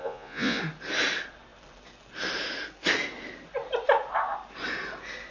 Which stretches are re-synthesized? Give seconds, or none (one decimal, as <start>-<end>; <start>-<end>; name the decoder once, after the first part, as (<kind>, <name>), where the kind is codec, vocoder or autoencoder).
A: 0.0-0.6 (vocoder, Vocos)